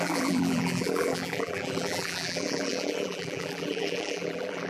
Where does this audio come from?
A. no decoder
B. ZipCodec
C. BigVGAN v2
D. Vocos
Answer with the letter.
C